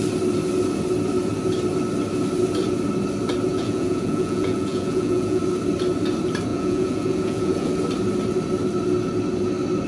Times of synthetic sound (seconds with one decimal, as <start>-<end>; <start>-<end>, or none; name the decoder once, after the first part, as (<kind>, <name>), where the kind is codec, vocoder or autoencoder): 3.5-5.4 (vocoder, Vocos); 6.5-7.7